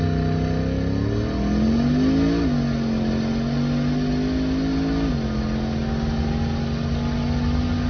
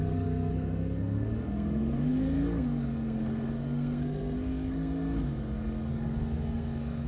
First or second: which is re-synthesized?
second